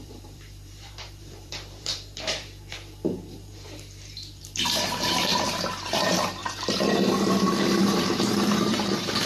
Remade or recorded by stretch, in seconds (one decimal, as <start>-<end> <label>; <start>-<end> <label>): 0.0-9.3 remade